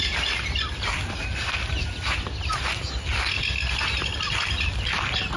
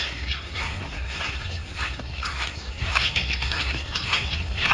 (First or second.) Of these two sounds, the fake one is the second